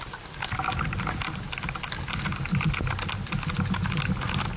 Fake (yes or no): no